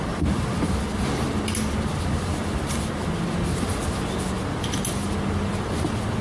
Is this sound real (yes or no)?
yes